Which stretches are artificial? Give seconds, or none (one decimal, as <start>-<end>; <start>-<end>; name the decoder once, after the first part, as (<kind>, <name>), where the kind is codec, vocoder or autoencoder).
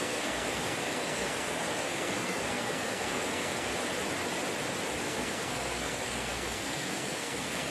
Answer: 0.0-3.7 (codec, SNAC); 5.0-7.7